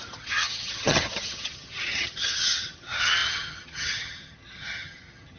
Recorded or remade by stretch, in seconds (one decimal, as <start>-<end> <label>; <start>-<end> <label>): 0.0-5.4 remade